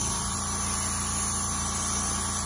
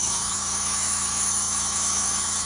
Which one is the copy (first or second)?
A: second